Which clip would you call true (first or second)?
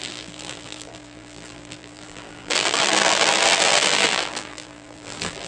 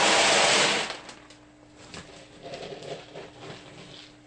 second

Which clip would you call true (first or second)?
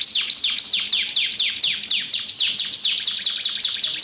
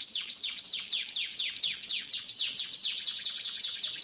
first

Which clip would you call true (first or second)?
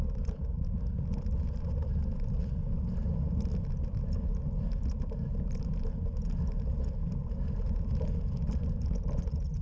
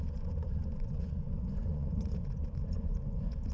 first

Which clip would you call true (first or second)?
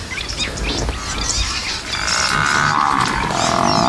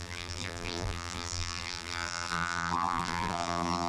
first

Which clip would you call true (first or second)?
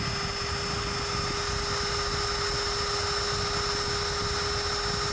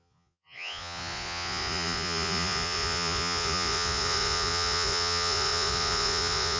first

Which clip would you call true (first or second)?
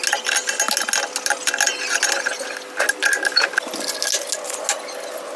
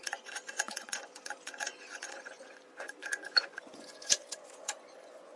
first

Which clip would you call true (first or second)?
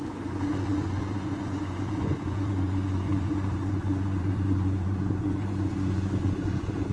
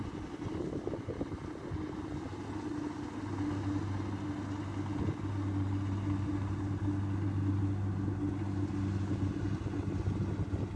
second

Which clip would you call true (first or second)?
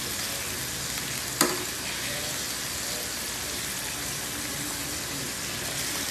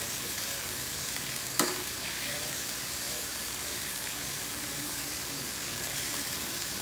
first